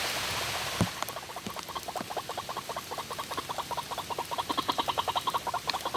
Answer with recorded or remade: recorded